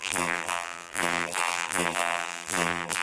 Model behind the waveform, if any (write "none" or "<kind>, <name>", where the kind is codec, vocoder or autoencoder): vocoder, BigVGAN v2